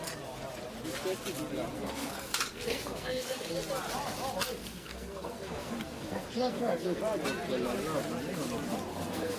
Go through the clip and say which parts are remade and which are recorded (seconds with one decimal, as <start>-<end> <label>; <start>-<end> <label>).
0.0-1.7 recorded; 1.7-3.5 remade; 3.5-4.6 recorded; 4.6-7.0 remade; 7.0-8.9 recorded; 8.9-9.4 remade